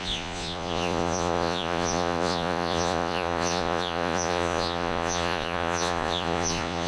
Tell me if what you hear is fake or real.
fake